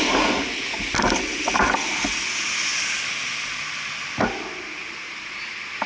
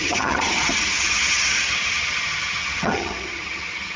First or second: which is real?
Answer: first